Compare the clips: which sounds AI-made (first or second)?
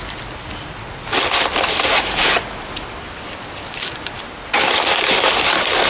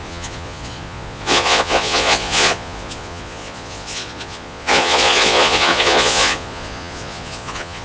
second